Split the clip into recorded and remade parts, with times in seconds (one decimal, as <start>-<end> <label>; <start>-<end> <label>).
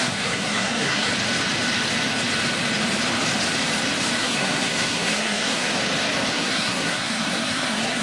0.0-1.1 remade; 1.1-4.2 recorded; 4.2-5.7 remade; 5.7-6.3 recorded; 6.3-8.0 remade